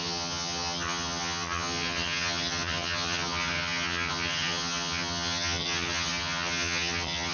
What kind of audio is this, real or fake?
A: fake